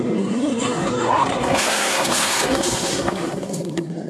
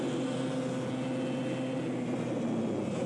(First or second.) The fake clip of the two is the first